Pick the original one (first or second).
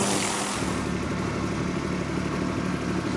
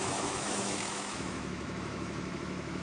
first